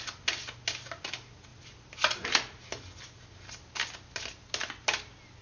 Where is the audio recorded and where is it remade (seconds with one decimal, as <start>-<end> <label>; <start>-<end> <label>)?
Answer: 0.0-5.4 recorded